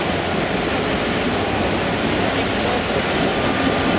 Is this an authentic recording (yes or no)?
yes